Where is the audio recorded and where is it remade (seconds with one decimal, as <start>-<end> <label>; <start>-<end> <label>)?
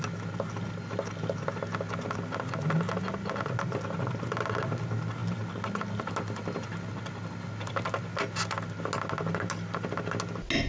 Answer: 0.0-10.7 recorded